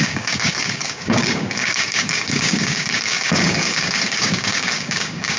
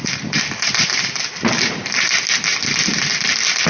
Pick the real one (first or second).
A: second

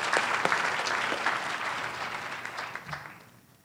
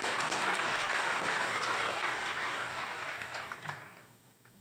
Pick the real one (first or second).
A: first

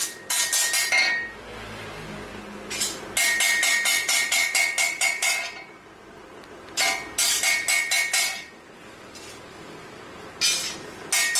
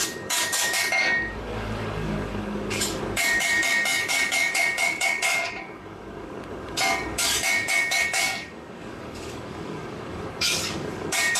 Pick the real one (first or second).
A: first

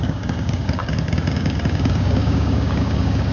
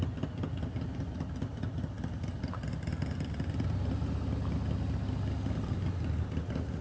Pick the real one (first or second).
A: second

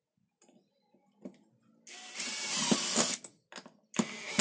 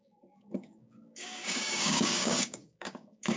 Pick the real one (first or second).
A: first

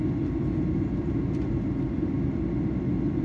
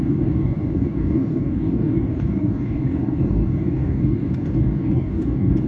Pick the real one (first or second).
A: first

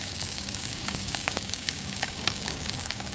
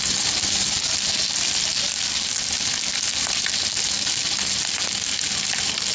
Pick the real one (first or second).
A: second